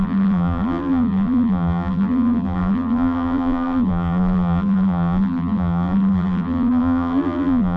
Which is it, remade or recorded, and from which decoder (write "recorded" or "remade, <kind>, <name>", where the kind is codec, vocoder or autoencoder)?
remade, vocoder, BigVGAN v2